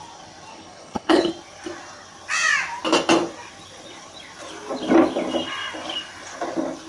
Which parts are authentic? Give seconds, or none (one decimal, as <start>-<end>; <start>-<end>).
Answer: 0.0-0.5; 1.3-6.9